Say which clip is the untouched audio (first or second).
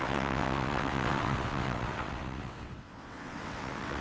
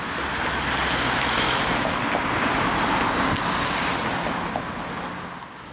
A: second